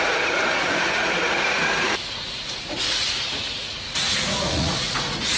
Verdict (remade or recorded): remade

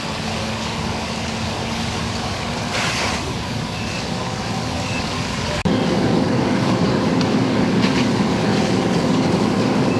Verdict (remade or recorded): remade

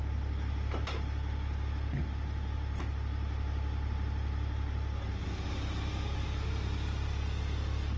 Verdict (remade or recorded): recorded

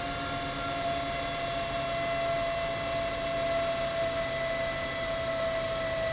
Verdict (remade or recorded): recorded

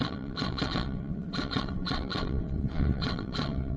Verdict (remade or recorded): remade